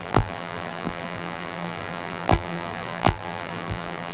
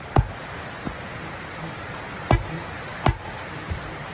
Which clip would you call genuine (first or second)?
second